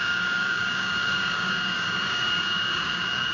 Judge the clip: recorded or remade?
remade